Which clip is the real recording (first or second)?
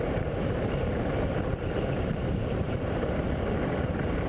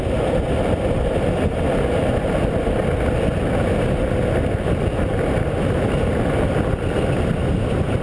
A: second